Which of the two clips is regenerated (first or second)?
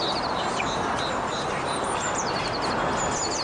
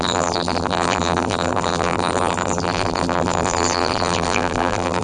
second